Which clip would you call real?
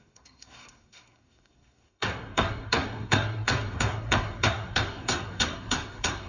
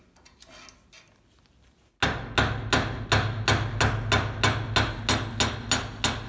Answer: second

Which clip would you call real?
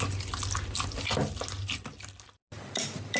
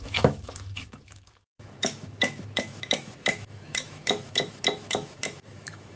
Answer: first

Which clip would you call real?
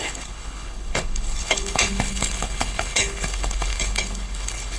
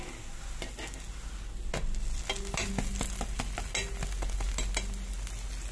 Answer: second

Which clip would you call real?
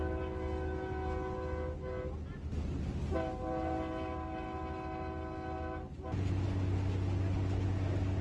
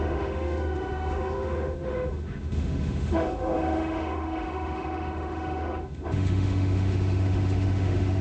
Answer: first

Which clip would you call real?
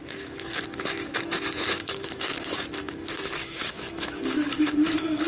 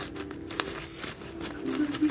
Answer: second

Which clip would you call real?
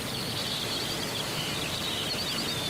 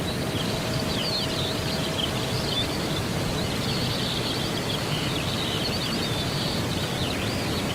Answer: first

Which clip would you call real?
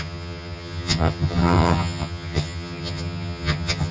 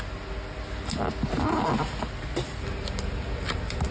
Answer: second